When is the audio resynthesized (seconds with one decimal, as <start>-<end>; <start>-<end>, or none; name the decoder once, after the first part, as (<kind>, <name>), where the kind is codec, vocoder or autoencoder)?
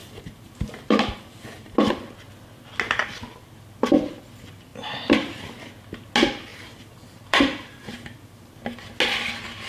0.0-2.1 (vocoder, BigVGAN v2); 4.7-5.5; 6.5-8.5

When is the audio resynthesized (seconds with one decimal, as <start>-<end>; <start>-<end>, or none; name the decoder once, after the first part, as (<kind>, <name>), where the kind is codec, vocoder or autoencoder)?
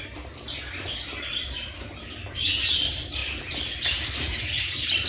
none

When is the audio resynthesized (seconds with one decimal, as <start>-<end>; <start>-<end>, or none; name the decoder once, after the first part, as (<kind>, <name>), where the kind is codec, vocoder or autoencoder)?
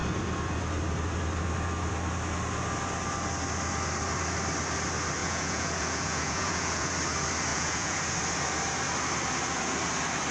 5.2-6.9 (vocoder, Vocos); 7.5-8.0